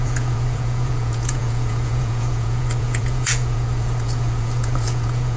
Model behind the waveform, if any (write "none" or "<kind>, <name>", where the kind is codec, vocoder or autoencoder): vocoder, Vocos